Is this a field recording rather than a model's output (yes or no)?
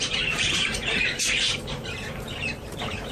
no